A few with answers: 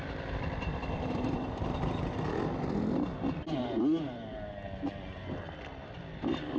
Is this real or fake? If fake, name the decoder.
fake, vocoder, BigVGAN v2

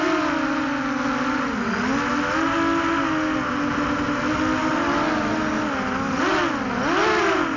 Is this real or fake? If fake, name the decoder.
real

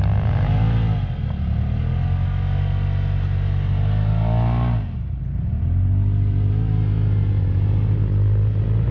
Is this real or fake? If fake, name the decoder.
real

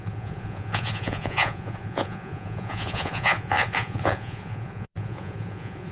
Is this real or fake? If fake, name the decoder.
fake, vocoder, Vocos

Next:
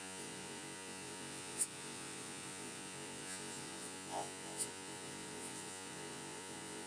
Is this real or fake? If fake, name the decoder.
fake, vocoder, Vocos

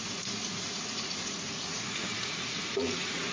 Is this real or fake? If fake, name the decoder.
fake, vocoder, Vocos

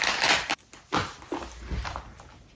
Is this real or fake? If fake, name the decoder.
real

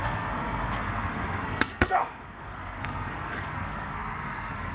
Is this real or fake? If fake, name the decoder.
fake, codec, SNAC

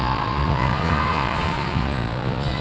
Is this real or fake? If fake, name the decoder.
fake, vocoder, Vocos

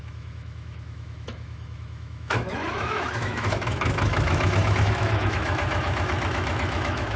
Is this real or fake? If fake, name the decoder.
fake, autoencoder, DAC-VAE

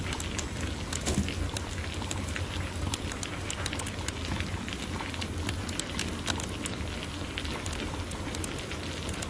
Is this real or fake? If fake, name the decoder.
real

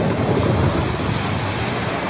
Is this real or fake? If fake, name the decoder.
real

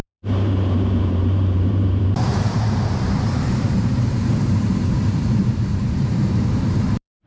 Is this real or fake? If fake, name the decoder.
fake, vocoder, BigVGAN v2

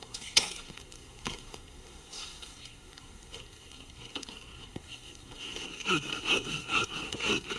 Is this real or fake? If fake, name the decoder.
fake, codec, SNAC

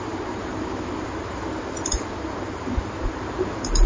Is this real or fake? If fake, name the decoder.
fake, vocoder, BigVGAN v2